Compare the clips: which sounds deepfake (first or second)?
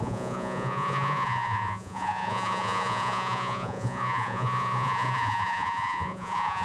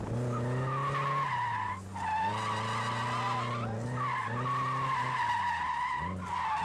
first